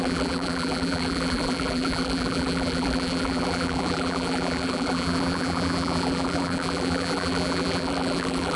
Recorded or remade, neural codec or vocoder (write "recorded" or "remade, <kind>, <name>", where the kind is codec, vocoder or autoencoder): remade, vocoder, BigVGAN v2